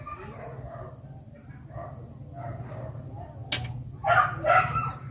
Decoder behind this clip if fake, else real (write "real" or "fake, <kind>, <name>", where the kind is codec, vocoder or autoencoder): real